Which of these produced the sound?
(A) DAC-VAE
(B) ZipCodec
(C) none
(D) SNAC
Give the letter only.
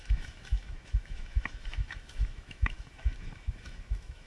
A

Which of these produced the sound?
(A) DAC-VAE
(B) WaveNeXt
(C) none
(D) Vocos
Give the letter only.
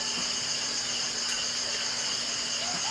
C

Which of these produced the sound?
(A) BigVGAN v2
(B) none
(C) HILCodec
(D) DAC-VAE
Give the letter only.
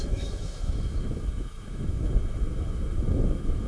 D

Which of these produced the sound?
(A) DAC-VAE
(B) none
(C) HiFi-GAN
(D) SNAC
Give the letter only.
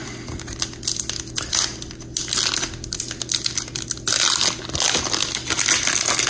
B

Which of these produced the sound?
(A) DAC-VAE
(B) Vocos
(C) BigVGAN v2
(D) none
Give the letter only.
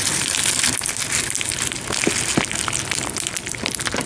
D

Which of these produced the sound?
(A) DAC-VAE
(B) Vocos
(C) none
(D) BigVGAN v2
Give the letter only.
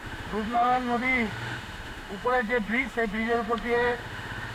A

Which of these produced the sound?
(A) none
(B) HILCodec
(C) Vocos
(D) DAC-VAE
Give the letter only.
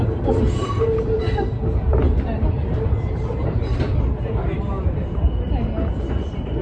A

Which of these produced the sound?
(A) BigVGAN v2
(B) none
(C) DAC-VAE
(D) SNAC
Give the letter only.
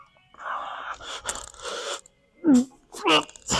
B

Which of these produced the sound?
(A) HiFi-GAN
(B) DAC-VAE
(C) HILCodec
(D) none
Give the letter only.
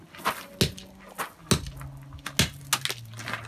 D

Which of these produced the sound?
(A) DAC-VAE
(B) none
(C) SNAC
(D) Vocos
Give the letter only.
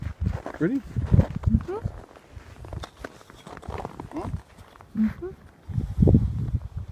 B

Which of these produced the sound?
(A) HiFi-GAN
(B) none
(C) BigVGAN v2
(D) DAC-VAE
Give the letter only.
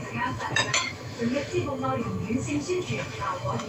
D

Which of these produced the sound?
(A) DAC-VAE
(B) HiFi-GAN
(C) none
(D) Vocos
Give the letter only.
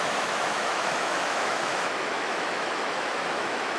A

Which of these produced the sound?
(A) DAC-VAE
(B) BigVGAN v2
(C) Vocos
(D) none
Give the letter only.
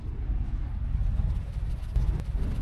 D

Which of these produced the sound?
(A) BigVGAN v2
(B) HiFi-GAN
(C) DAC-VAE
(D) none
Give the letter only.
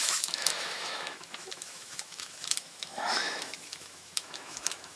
C